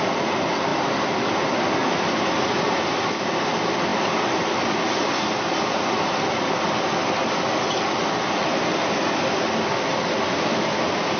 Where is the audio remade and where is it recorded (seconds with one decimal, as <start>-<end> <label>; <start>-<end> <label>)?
0.0-11.2 recorded